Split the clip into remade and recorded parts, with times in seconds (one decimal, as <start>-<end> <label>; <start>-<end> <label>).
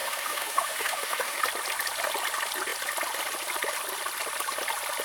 0.0-1.4 remade; 1.4-5.0 recorded